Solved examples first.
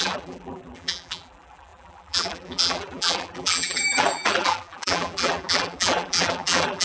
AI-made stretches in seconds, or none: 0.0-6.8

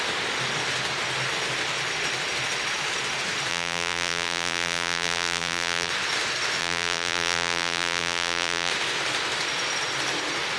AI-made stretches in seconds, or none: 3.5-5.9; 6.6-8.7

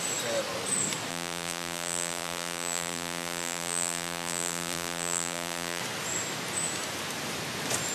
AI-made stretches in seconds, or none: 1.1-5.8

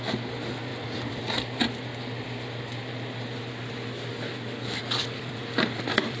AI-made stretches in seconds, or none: 0.7-1.2; 4.8-6.2

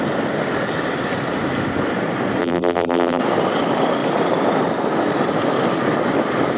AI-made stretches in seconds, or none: 2.4-3.2

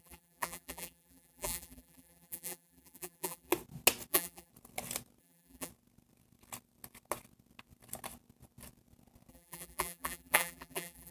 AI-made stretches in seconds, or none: 0.0-3.5; 4.1-4.5; 5.2-5.7; 9.3-11.1

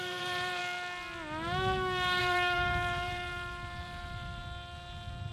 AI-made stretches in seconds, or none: 0.0-0.6; 2.2-4.4

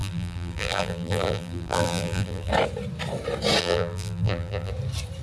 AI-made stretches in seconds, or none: 0.0-2.5; 3.6-4.7